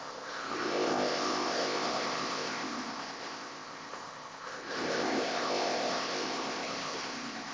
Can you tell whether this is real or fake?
fake